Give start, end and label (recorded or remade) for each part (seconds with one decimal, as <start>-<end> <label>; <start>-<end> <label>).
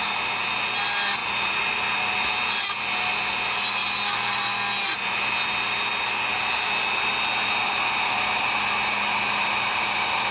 0.0-10.3 recorded